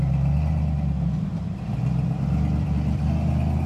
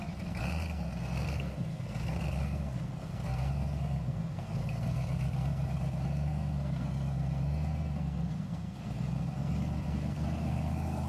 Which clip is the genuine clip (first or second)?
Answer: first